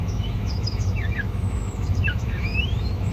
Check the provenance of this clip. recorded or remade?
remade